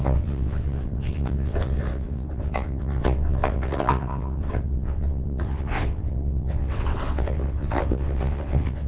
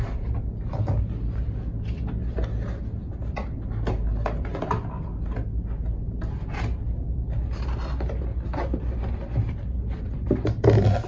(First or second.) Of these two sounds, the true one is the second